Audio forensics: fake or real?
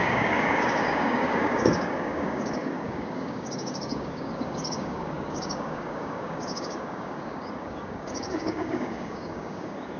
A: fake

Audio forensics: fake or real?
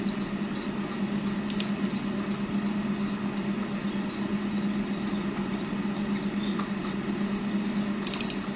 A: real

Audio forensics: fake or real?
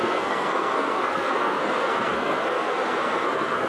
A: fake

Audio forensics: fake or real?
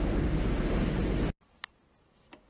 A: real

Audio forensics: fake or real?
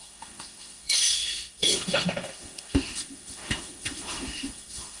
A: fake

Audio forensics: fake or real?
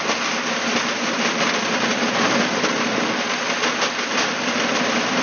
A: real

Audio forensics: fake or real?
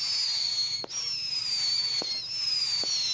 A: real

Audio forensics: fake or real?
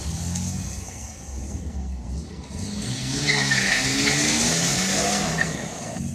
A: fake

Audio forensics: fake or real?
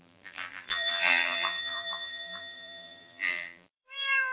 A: fake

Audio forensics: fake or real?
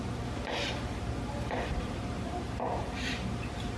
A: fake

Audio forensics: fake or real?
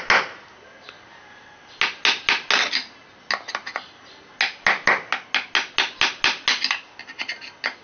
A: real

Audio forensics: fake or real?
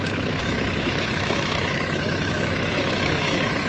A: fake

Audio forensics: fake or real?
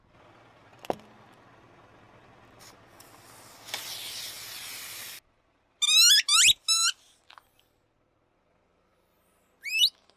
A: real